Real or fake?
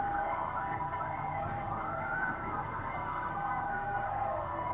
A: fake